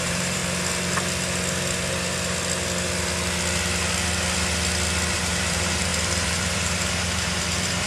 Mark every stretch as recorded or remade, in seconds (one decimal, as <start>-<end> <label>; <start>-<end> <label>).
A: 0.0-0.4 remade; 0.4-5.1 recorded; 5.1-7.9 remade